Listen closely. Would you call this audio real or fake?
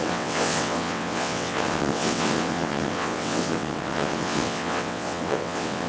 fake